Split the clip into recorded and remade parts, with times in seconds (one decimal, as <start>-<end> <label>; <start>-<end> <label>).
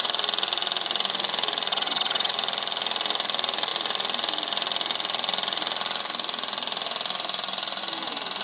0.0-1.7 recorded; 1.7-2.3 remade; 2.3-8.4 recorded